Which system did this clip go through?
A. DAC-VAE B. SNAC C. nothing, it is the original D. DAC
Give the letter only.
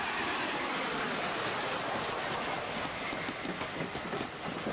C